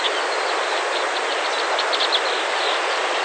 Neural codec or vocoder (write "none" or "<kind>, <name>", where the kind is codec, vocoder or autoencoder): none